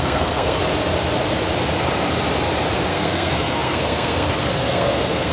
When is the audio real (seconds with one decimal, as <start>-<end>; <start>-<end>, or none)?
0.6-2.9